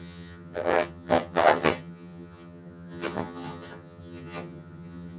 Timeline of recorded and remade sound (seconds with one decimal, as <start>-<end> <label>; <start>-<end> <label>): 0.0-5.2 remade